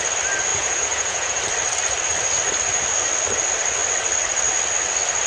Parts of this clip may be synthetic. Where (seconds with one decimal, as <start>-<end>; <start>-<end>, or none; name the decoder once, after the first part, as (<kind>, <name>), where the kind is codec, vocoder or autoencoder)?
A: 0.5-1.4 (vocoder, Vocos)